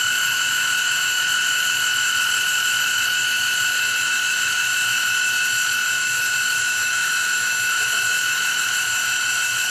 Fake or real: fake